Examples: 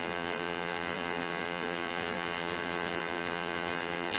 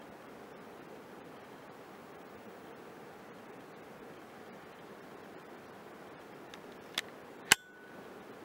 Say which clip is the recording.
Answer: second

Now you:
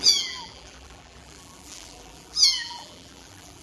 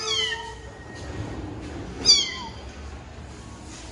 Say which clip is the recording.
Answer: second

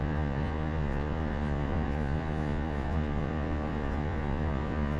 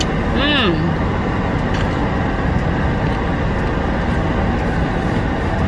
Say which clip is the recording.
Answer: second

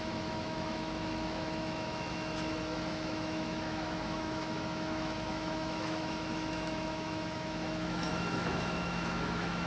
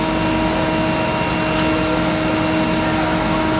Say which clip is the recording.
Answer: second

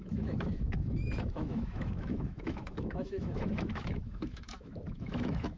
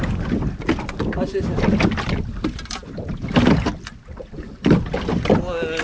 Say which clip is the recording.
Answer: second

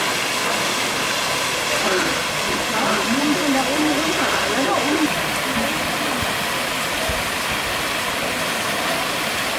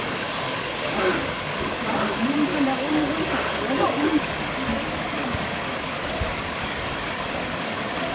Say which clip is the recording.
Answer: first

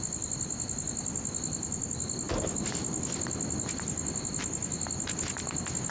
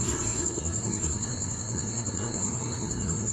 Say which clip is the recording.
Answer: first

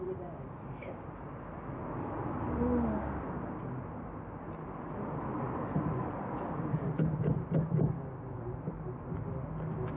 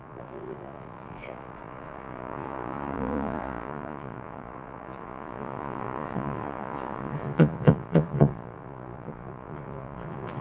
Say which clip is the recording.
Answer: first